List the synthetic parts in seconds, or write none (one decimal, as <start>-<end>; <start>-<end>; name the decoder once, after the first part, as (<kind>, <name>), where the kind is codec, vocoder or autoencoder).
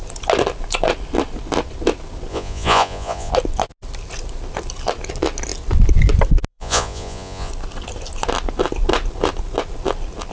2.3-3.3 (vocoder, Vocos); 6.5-7.5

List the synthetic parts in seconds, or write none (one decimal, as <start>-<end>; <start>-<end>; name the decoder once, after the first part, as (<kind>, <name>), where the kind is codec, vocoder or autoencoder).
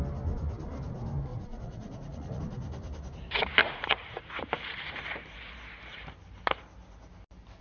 1.3-2.4 (vocoder, Vocos); 3.6-4.5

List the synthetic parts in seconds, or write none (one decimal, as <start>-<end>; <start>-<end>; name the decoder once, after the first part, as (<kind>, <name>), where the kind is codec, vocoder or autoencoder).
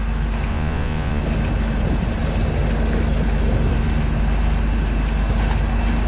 0.5-1.2 (vocoder, Vocos)